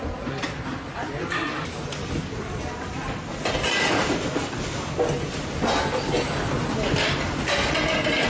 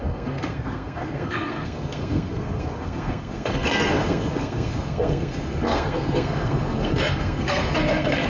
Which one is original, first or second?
first